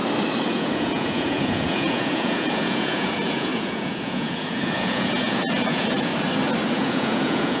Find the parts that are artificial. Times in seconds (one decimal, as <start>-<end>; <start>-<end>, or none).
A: 0.5-6.1; 6.7-7.6